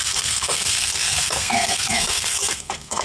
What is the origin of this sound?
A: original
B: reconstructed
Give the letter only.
B